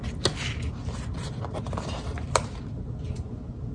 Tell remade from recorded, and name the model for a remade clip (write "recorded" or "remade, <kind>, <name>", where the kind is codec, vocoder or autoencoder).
recorded